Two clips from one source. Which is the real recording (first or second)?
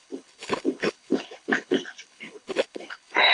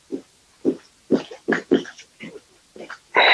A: second